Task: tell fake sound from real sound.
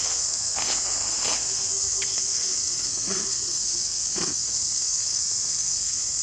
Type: fake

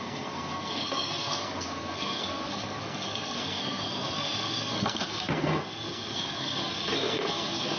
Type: fake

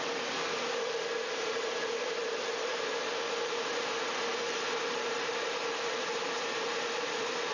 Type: real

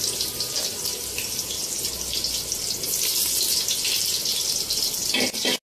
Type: real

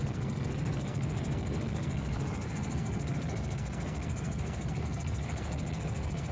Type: fake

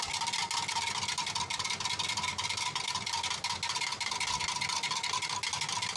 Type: real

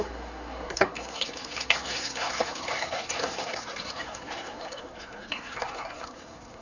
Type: fake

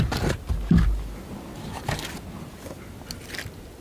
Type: real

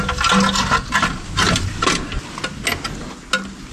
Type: real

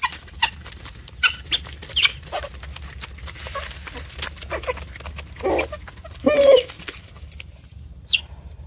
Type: real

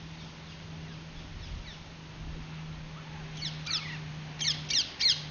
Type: real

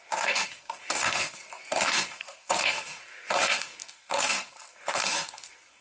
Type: fake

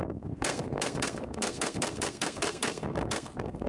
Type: fake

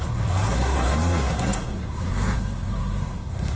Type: fake